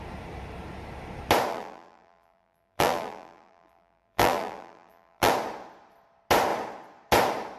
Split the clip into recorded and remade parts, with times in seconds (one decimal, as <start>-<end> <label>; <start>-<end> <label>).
0.0-1.5 recorded; 1.5-5.3 remade; 5.3-7.6 recorded